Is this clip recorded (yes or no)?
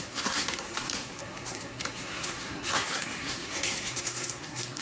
no